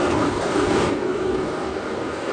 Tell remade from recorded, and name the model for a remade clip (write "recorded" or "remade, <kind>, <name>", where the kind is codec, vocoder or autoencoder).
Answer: remade, codec, DAC